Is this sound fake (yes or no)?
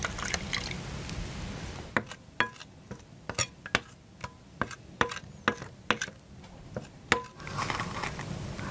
no